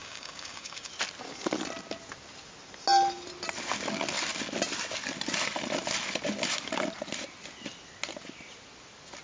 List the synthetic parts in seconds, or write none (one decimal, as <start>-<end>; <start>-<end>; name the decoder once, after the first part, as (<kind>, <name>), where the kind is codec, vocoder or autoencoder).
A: 0.0-0.9 (codec, DAC)